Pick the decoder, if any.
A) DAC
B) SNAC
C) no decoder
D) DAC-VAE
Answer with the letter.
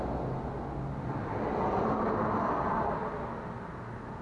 C